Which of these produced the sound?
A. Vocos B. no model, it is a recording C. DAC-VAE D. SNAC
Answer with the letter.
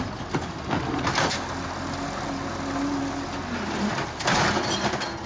B